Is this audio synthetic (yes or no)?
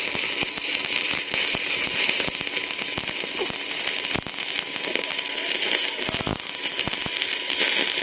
no